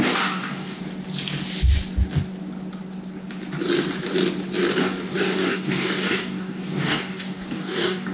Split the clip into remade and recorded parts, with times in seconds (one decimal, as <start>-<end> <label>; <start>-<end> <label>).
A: 0.0-0.8 remade; 0.8-4.8 recorded; 4.8-8.1 remade